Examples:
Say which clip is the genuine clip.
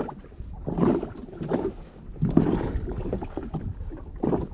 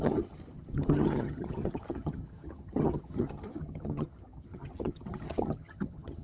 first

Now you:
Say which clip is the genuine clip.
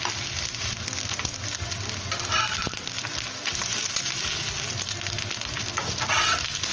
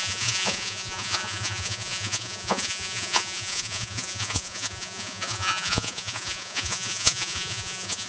first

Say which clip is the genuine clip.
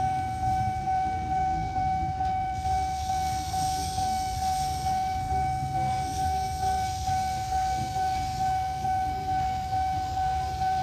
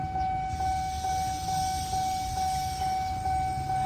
second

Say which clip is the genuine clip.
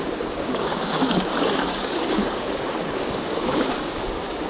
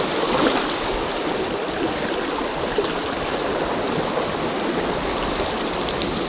second